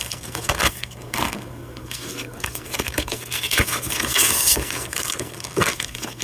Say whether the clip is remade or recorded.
remade